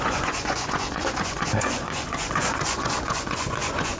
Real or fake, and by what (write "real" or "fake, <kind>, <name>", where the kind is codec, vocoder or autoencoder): fake, vocoder, Vocos